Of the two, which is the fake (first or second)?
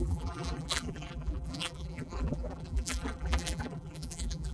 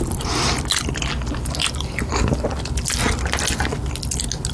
first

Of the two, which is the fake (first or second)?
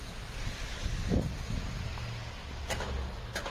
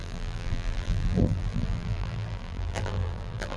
second